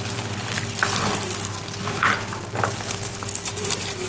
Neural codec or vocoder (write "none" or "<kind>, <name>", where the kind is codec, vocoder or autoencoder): none